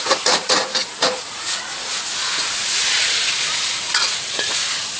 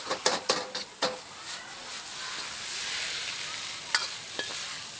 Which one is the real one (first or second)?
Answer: second